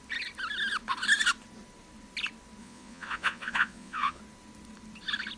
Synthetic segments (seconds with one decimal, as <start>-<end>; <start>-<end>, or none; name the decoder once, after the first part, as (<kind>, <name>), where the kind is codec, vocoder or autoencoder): 2.6-4.2 (vocoder, Vocos)